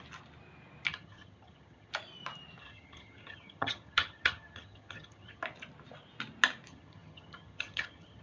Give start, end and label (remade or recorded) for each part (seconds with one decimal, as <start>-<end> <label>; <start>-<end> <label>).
0.0-0.9 recorded; 0.9-1.9 remade; 1.9-2.6 recorded; 2.6-5.4 remade; 5.4-6.7 recorded; 6.7-8.2 remade